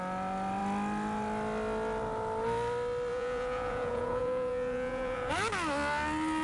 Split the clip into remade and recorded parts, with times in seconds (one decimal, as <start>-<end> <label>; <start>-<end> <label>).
0.0-3.1 recorded; 3.1-5.3 remade; 5.3-6.4 recorded